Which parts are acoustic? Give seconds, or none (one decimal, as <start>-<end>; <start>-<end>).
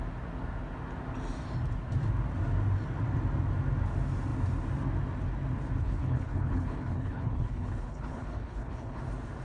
0.0-5.8; 9.0-9.4